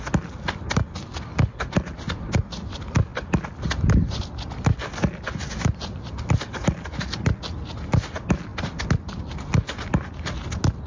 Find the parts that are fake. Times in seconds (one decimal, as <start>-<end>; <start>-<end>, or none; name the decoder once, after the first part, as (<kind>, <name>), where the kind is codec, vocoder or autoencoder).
none